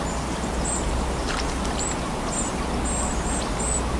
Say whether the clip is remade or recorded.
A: recorded